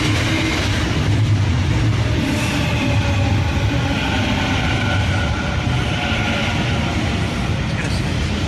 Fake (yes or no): no